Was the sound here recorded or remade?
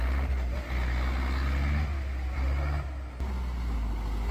recorded